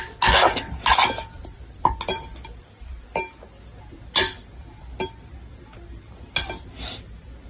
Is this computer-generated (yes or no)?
no